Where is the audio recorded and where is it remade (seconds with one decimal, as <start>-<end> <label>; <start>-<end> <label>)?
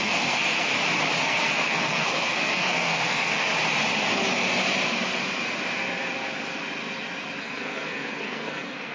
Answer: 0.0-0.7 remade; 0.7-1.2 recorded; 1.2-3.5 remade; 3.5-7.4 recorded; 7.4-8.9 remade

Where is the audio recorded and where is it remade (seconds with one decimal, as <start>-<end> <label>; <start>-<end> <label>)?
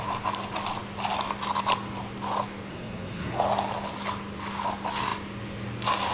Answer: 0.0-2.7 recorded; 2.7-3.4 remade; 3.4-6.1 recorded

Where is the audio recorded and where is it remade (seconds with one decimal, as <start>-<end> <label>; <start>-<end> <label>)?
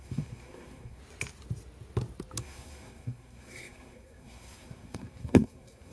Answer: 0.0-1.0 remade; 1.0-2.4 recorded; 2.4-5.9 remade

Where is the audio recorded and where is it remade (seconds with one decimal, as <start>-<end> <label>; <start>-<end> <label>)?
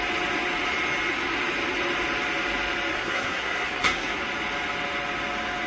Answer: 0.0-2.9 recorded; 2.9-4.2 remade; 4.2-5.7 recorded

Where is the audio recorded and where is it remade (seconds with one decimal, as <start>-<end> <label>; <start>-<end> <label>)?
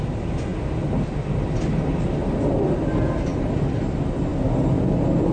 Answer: 0.0-5.3 recorded